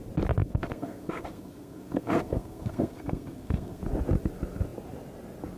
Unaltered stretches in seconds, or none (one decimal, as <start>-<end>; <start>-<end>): 0.0-0.4; 3.8-5.6